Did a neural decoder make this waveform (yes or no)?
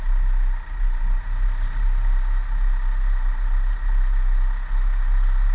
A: no